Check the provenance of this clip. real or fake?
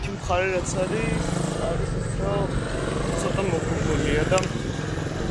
real